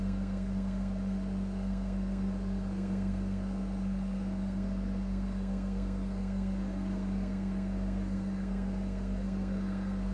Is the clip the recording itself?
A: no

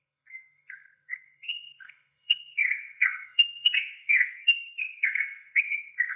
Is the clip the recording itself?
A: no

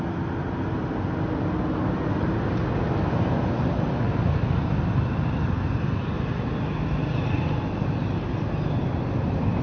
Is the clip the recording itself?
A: yes